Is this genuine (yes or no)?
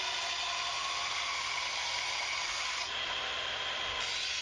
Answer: yes